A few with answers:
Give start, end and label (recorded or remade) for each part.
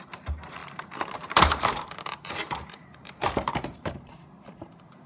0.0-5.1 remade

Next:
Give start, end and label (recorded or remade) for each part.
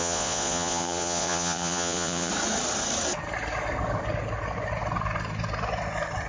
0.0-2.3 remade; 2.3-6.3 recorded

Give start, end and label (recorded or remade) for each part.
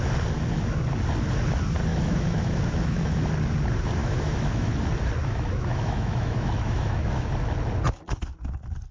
0.0-1.9 recorded; 1.9-3.2 remade; 3.2-4.0 recorded; 4.0-4.7 remade; 4.7-5.2 recorded; 5.2-7.3 remade; 7.3-8.9 recorded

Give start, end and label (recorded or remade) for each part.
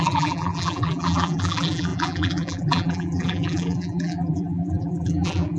0.0-5.6 remade